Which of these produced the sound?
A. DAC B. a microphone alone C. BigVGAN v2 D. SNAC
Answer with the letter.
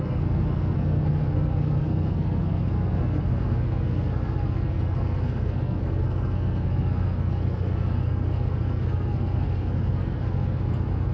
D